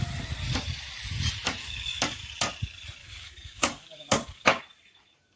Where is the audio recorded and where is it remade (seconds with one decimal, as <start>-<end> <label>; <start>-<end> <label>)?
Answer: 0.0-1.6 recorded; 1.6-2.2 remade; 2.2-3.0 recorded; 3.0-4.6 remade; 4.6-5.4 recorded